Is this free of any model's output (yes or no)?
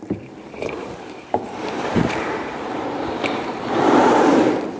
no